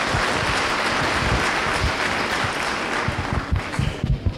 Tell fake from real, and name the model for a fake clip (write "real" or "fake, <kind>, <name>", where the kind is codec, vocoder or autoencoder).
real